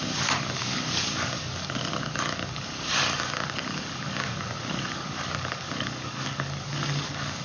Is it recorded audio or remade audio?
remade